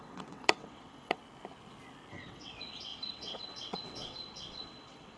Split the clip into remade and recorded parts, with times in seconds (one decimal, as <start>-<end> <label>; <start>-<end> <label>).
0.0-1.2 remade; 1.2-2.1 recorded; 2.1-5.2 remade